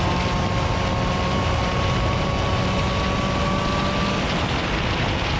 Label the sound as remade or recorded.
recorded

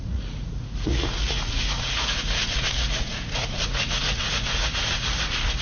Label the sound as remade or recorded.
remade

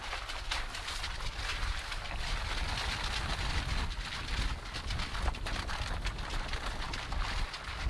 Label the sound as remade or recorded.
recorded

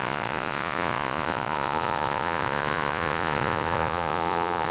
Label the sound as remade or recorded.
remade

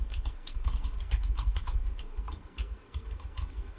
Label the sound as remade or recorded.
remade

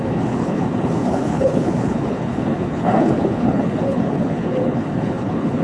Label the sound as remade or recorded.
remade